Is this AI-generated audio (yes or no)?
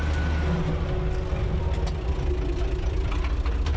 no